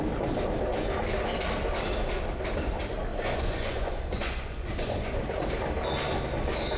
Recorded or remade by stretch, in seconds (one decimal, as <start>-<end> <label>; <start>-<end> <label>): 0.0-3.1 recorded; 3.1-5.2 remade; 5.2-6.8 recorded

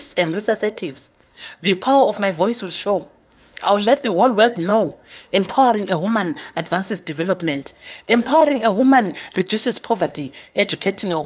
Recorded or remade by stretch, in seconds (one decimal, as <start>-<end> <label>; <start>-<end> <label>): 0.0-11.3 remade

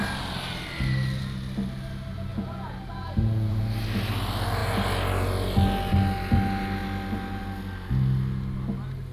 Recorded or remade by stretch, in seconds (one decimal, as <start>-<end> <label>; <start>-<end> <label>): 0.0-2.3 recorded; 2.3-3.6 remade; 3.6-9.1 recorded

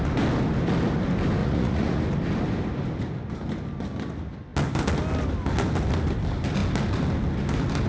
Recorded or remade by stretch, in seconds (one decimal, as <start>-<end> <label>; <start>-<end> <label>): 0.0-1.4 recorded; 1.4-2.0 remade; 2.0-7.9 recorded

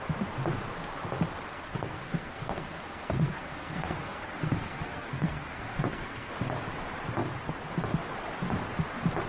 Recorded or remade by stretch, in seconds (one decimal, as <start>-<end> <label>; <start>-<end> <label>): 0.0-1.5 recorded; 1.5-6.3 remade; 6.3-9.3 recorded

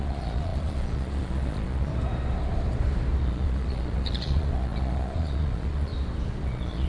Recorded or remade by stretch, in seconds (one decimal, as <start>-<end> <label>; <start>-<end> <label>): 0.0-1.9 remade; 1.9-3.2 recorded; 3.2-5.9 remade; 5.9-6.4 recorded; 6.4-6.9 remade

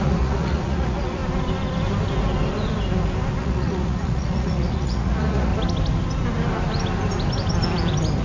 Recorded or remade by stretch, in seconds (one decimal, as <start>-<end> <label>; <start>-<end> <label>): 0.0-1.2 remade; 1.2-3.4 recorded; 3.4-5.5 remade; 5.5-8.2 recorded